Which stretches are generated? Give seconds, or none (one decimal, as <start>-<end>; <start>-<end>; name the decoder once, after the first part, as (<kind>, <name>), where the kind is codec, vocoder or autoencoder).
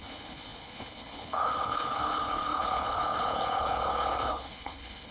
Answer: 0.0-5.1 (codec, HILCodec)